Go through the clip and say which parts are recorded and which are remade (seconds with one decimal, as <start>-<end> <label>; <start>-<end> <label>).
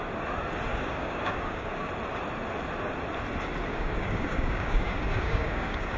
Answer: 0.0-0.7 recorded; 0.7-1.9 remade; 1.9-3.7 recorded; 3.7-6.0 remade